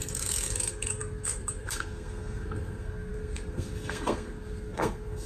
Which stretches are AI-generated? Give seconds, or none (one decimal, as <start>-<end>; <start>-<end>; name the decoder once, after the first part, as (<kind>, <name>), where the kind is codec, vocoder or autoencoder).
0.0-5.3 (codec, SNAC)